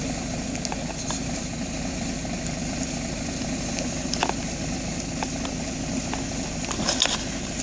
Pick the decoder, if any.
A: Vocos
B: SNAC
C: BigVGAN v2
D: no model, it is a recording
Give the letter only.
D